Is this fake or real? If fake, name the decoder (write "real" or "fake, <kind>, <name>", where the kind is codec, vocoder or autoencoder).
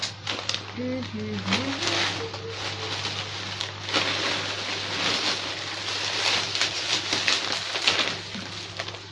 real